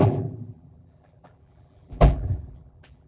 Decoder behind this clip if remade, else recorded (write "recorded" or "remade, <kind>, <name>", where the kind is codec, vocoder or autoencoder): remade, vocoder, BigVGAN v2